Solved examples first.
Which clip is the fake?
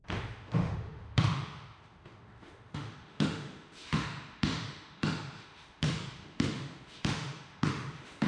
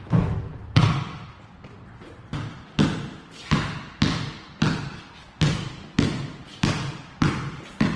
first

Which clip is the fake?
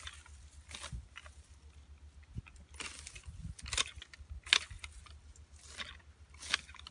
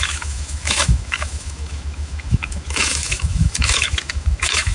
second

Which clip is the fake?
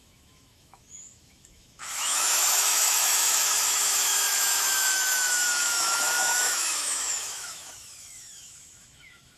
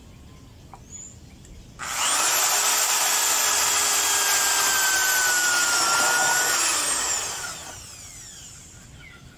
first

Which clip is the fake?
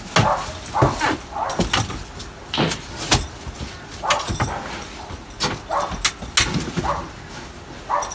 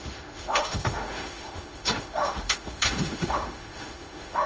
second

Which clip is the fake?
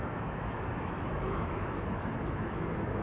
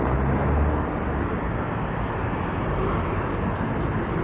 first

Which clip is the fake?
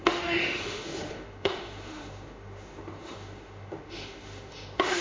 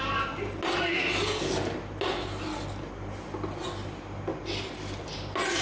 first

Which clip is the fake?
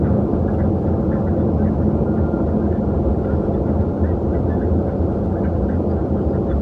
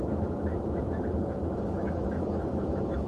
second